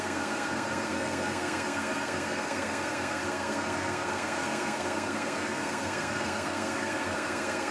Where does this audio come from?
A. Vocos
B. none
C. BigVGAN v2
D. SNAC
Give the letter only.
D